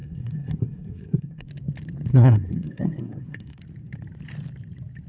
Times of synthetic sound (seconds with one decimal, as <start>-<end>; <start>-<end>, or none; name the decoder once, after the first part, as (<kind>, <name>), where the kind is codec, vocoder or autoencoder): 0.0-1.5 (codec, SNAC); 2.1-3.6